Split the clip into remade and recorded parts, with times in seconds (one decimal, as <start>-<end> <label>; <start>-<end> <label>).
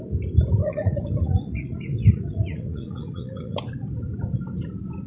0.0-0.6 recorded; 0.6-3.7 remade; 3.7-5.1 recorded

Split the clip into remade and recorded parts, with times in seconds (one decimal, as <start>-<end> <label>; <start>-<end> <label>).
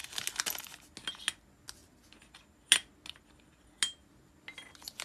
0.0-5.0 recorded